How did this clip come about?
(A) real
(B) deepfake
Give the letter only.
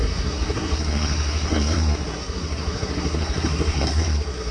B